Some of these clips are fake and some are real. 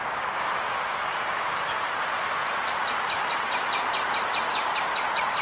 real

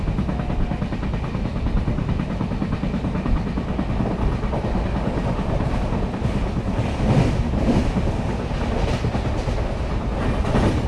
real